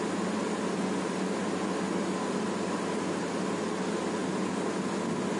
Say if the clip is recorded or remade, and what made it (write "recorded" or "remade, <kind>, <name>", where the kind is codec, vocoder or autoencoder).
recorded